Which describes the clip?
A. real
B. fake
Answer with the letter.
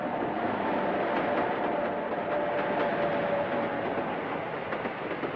A